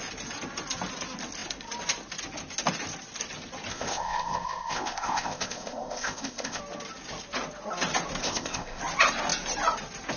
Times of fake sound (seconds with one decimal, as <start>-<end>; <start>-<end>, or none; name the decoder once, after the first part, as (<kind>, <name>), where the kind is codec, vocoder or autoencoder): 3.7-6.6 (codec, ZipCodec); 8.2-8.8

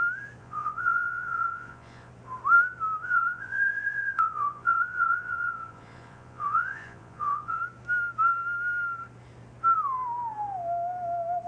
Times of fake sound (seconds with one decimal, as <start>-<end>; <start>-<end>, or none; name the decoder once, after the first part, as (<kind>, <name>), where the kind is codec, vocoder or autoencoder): 0.4-2.1 (vocoder, Vocos); 3.0-7.6

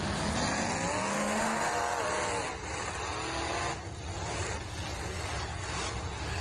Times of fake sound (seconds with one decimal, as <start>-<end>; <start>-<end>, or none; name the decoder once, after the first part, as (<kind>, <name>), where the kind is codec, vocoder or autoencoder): 1.1-1.7 (autoencoder, DAC-VAE)

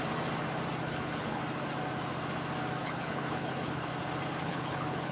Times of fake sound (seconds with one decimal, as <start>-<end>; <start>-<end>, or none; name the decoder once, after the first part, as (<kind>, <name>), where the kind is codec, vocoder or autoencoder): 0.8-1.4 (codec, HILCodec); 2.8-3.9; 4.4-5.1